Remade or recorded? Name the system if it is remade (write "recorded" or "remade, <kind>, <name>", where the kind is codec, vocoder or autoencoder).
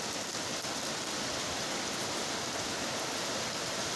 recorded